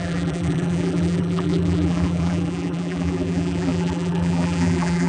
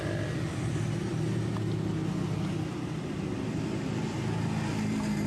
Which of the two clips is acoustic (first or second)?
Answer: second